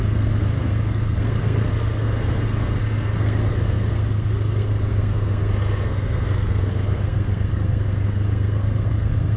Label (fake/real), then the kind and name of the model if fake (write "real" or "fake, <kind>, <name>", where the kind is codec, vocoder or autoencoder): fake, codec, SNAC